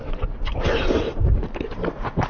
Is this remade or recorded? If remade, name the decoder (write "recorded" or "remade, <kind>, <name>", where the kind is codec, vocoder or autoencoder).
recorded